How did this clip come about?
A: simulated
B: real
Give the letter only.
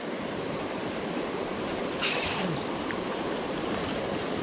A